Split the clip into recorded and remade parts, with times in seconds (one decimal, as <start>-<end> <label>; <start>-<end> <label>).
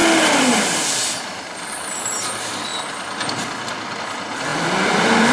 0.0-4.5 recorded; 4.5-5.3 remade